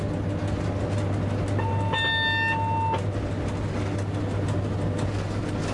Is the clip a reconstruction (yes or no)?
no